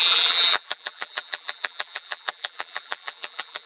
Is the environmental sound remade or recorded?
remade